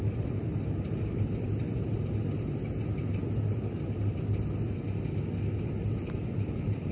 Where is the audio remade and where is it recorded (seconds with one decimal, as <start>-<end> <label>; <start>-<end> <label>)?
0.0-1.7 remade; 1.7-5.8 recorded; 5.8-6.9 remade